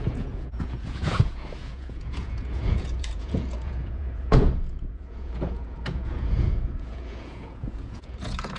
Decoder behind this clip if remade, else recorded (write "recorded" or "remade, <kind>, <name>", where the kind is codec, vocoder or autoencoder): remade, vocoder, Vocos